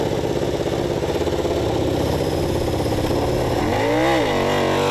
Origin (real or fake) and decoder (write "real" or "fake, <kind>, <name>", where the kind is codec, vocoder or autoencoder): real